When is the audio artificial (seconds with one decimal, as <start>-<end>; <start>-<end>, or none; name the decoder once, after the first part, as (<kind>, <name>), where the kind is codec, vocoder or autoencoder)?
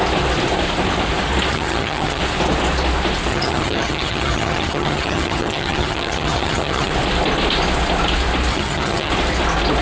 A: 1.5-2.2 (vocoder, HiFi-GAN); 3.3-6.9; 8.5-9.1